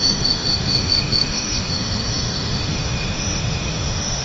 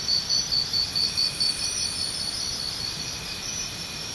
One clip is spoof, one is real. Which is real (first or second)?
second